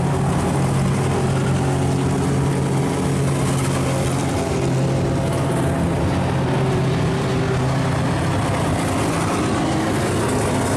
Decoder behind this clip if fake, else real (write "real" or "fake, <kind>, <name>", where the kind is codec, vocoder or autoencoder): real